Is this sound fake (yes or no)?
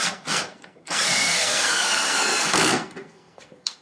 yes